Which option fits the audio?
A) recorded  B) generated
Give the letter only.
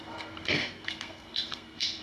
B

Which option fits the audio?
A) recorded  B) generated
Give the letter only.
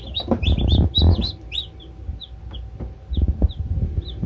A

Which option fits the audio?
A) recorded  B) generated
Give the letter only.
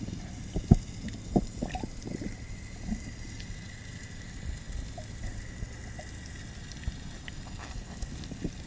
A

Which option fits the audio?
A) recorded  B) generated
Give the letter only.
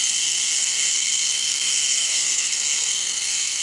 B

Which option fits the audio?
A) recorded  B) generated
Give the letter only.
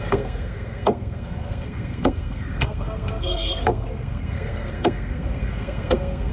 B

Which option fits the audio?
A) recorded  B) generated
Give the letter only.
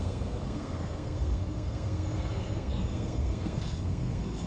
B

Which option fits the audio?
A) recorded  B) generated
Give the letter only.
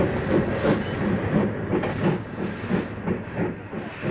A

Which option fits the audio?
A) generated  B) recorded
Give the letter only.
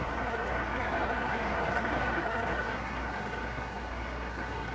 A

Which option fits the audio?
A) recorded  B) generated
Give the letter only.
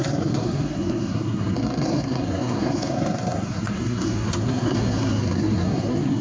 B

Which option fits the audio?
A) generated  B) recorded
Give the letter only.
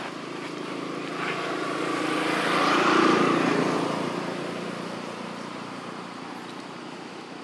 B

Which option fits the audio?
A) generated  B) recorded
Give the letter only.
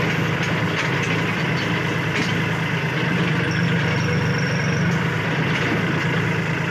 B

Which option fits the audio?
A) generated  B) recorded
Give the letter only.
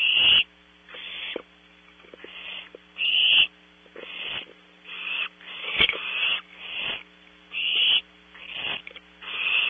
B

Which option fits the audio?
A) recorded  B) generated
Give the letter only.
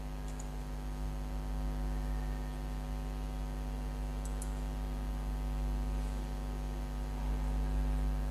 A